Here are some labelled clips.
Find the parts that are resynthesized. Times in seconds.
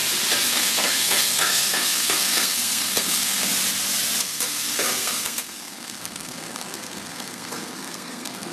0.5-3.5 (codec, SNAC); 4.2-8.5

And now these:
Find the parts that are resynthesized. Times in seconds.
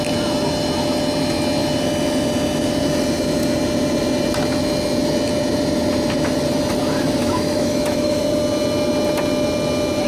7.2-8.2 (autoencoder, DAC-VAE)